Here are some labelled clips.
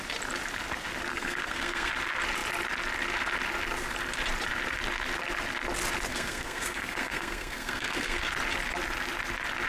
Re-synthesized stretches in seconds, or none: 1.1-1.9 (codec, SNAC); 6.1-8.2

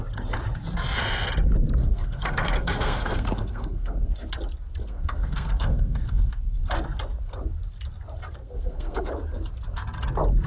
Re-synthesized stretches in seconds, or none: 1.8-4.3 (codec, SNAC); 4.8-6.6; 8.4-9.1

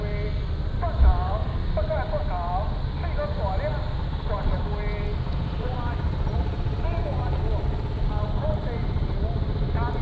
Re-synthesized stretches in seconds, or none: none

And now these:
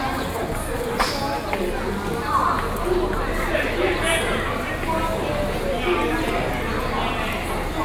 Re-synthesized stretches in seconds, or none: none